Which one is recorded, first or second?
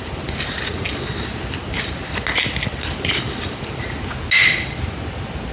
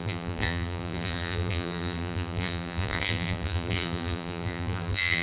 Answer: first